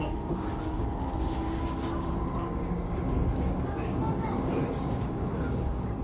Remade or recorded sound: remade